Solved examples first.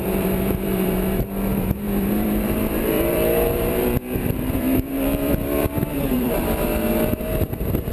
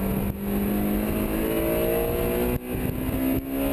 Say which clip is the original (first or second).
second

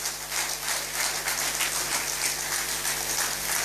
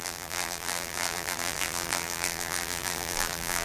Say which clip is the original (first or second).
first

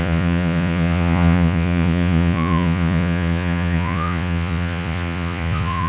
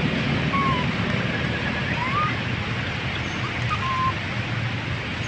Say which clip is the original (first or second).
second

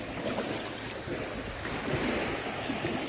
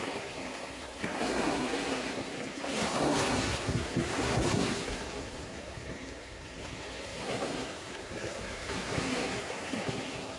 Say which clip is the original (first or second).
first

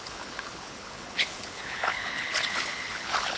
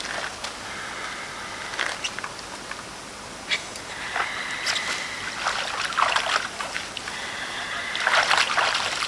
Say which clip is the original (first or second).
second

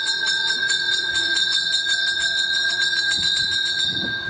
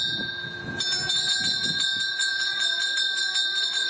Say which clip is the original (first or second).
second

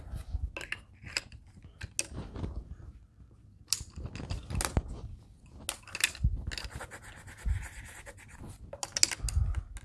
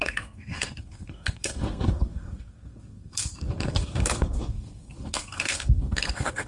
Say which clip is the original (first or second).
first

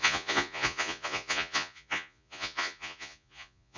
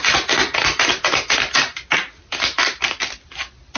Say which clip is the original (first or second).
second